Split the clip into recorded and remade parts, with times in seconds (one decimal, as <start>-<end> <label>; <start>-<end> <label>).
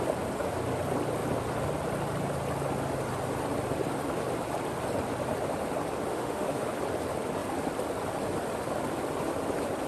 0.0-6.1 recorded; 6.1-6.7 remade; 6.7-9.9 recorded